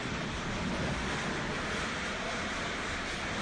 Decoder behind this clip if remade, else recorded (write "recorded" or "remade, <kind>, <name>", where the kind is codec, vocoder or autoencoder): remade, vocoder, BigVGAN v2